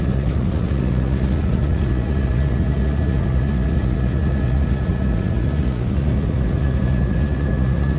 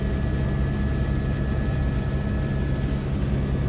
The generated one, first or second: first